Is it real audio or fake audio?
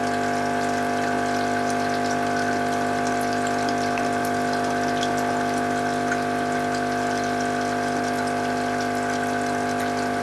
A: real